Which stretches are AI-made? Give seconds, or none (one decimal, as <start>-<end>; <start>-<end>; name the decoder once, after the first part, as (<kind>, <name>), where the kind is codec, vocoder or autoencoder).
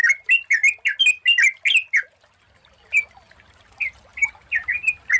none